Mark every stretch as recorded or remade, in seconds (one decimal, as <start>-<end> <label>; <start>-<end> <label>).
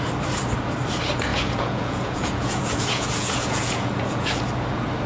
0.0-1.3 recorded; 1.3-4.4 remade; 4.4-5.1 recorded